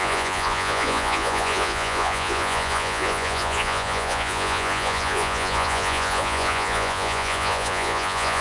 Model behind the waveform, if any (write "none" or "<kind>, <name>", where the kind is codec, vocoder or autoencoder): vocoder, Vocos